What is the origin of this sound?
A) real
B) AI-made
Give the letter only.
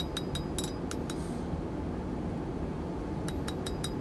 A